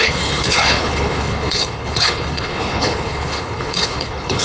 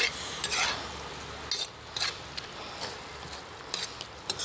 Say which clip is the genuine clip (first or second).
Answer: second